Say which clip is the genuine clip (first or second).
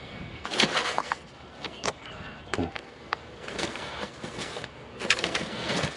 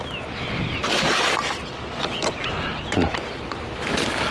second